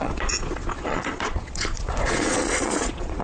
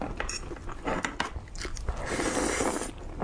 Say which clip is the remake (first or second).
first